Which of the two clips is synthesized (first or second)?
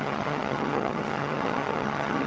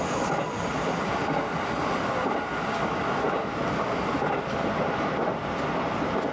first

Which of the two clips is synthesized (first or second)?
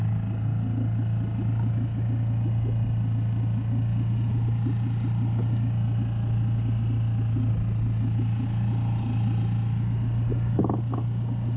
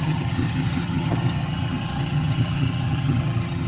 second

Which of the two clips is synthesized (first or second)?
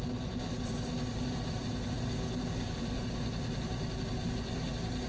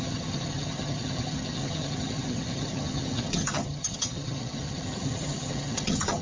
second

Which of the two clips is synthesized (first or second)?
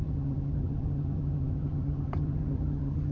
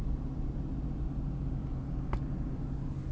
first